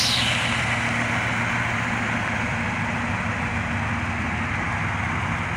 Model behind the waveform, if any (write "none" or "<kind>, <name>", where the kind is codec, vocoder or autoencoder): none